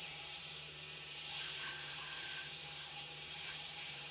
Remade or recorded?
remade